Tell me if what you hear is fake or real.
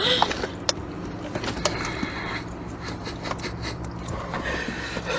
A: real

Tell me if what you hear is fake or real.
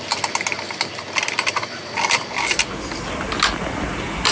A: real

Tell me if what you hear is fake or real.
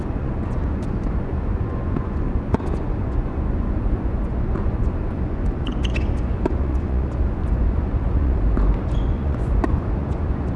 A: fake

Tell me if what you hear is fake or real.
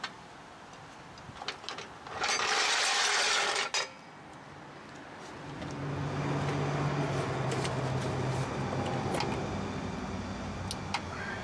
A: real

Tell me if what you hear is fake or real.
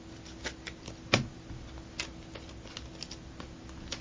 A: real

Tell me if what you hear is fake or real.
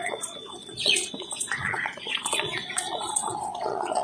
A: fake